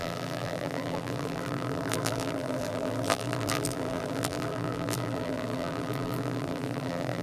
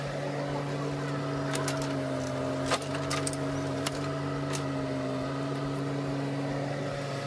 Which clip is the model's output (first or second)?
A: first